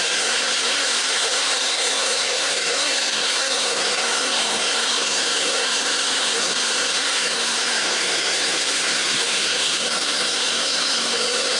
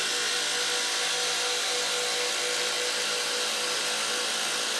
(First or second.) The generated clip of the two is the first